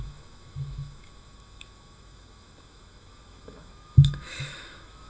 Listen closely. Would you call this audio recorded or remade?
remade